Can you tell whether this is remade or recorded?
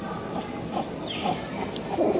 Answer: recorded